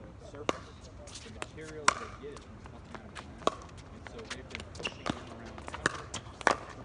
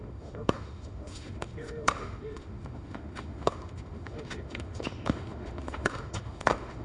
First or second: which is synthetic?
second